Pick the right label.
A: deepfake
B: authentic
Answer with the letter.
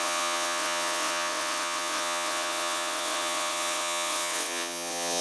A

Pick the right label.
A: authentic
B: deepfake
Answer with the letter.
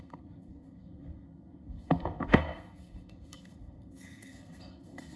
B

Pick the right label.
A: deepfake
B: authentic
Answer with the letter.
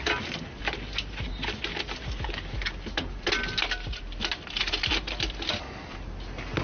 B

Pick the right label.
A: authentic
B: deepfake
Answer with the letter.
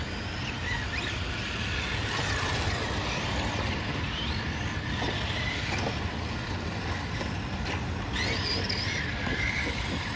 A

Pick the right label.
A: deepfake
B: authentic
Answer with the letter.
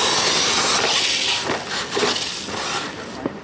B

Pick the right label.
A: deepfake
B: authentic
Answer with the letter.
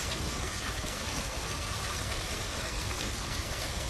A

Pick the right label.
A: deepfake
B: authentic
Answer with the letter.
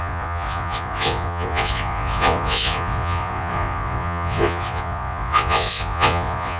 A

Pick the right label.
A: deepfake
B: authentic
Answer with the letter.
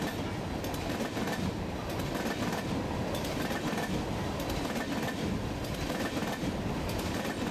B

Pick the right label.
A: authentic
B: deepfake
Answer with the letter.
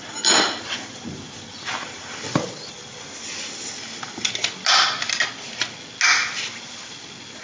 A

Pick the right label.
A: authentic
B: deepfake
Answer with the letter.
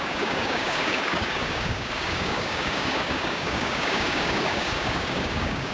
B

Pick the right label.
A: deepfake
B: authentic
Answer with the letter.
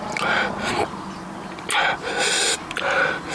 B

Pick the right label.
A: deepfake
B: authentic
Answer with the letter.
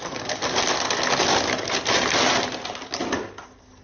B